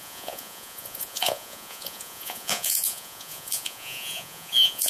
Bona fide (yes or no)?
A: no